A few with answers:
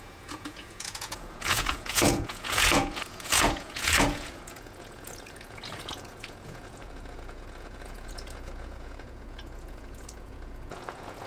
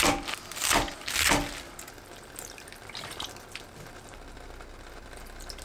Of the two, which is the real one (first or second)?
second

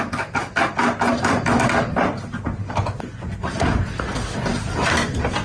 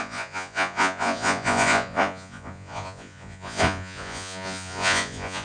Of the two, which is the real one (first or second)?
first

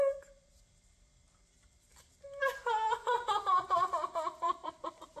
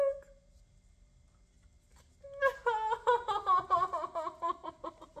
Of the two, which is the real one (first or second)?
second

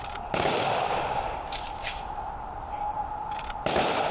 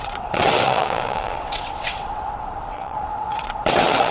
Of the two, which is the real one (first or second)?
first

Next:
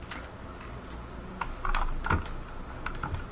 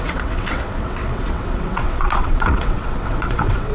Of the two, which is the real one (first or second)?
first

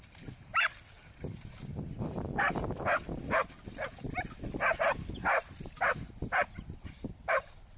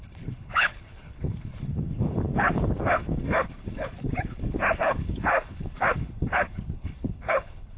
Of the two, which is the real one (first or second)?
first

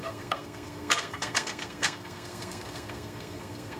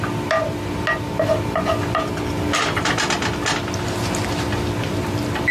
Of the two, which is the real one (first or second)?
second